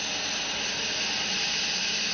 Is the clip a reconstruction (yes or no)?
no